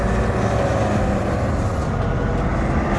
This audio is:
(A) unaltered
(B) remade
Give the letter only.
A